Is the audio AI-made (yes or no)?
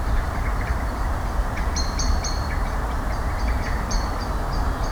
yes